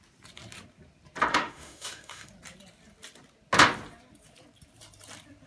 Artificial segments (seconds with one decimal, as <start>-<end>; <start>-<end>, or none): 1.3-2.3